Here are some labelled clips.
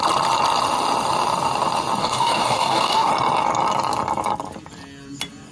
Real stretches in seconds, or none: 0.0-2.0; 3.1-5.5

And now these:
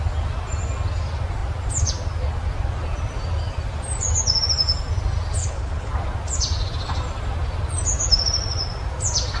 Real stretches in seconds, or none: 0.0-5.4; 5.9-9.4

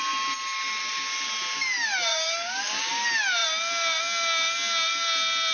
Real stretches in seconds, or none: 0.0-2.1; 2.9-5.5

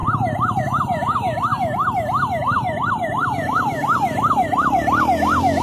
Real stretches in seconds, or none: 1.5-2.4

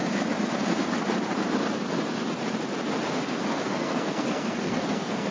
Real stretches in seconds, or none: 0.0-3.2

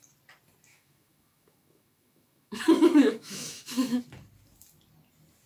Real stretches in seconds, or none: 0.0-0.7; 4.0-5.5

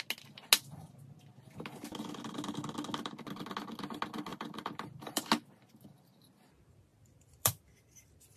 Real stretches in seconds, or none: 0.0-4.3; 5.2-6.9; 7.5-8.4

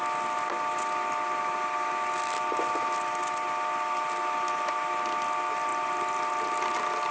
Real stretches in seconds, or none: 0.0-7.1